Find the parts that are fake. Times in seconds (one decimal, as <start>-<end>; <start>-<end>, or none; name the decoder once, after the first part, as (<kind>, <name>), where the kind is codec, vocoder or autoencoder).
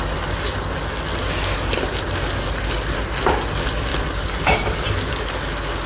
3.9-5.2 (vocoder, BigVGAN v2)